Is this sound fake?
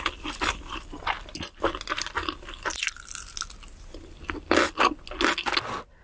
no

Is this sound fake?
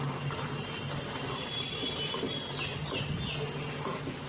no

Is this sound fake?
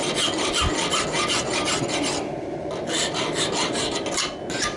no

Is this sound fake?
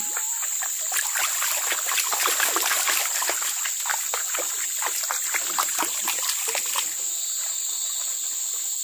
no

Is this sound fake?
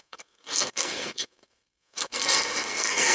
yes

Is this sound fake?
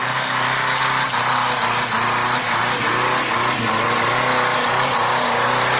no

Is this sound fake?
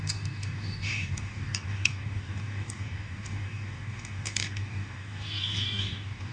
yes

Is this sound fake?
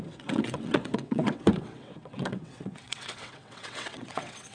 yes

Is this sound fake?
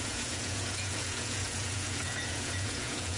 yes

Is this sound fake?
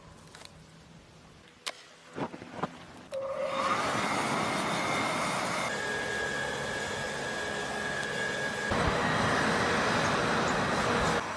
no